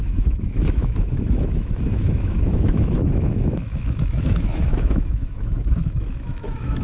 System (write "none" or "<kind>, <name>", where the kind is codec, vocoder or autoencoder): autoencoder, DAC-VAE